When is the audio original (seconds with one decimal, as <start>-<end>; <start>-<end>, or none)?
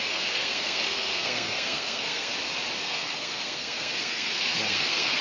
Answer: 2.3-2.8